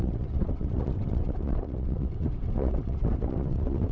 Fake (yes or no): yes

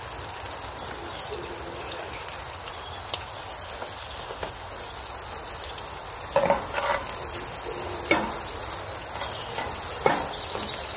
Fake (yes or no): no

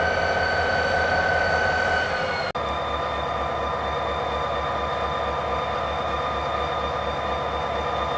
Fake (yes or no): no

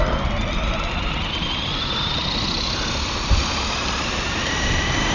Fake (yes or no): no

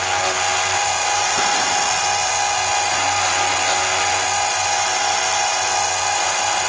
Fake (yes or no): no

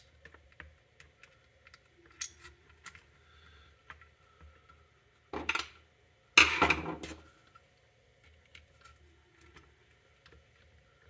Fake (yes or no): no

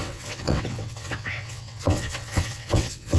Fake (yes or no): yes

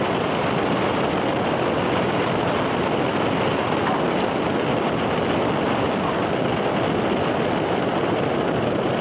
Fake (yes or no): no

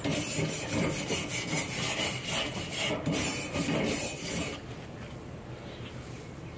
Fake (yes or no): no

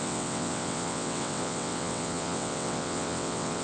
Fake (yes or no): yes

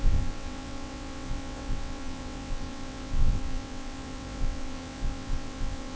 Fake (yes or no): yes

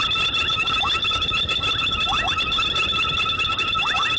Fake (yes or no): no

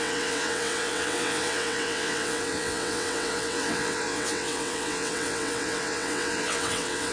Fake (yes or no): yes